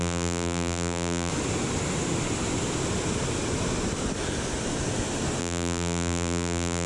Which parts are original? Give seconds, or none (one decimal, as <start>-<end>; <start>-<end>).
1.3-5.4